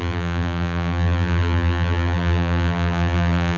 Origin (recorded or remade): remade